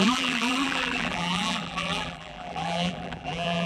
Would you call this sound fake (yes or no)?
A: yes